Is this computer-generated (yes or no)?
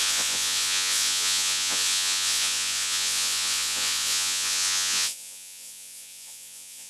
yes